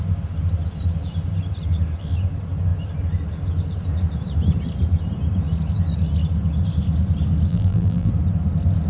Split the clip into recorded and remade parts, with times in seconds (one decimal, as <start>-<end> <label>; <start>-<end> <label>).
0.0-7.5 recorded; 7.5-8.1 remade; 8.1-8.9 recorded